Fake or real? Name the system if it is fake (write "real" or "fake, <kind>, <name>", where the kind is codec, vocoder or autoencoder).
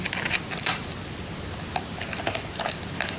real